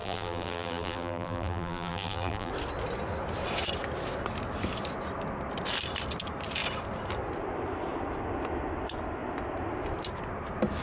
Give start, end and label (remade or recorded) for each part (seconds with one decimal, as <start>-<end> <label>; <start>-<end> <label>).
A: 0.0-2.5 remade; 2.5-10.8 recorded